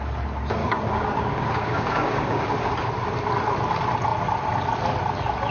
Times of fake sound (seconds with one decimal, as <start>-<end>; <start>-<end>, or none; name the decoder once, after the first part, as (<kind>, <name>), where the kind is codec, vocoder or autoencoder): 0.6-2.9 (codec, DAC)